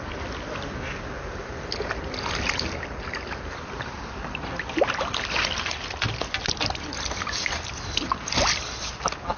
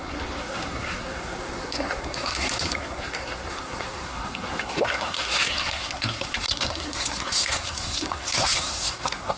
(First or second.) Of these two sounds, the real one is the first